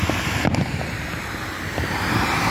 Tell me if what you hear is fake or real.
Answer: fake